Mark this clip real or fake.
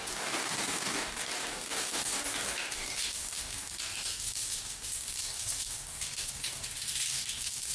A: fake